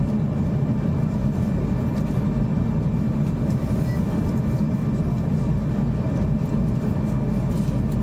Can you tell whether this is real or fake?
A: real